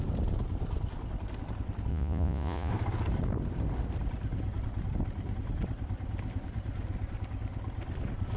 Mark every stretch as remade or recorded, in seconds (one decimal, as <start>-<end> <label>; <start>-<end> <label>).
0.0-1.9 recorded; 1.9-2.7 remade; 2.7-8.4 recorded